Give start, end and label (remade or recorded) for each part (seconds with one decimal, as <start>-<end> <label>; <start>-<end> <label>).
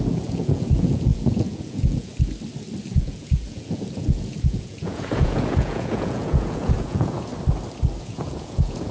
0.0-2.1 remade; 2.1-2.9 recorded; 2.9-7.3 remade; 7.3-8.0 recorded; 8.0-8.9 remade